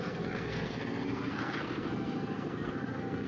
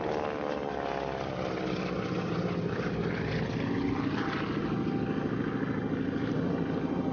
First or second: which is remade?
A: first